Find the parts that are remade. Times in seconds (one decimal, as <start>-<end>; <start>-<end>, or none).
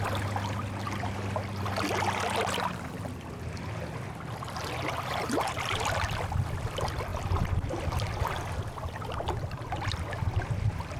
none